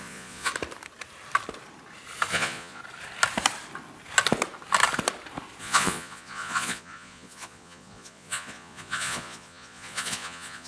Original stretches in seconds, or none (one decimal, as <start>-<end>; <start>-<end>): 0.5-2.3; 2.8-5.6